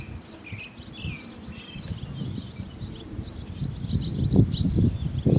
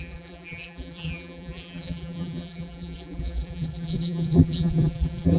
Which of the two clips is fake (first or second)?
second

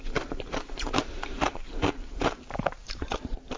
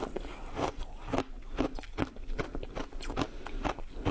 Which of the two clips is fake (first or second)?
first